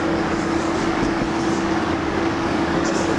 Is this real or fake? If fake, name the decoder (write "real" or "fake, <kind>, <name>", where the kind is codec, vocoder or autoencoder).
fake, codec, DAC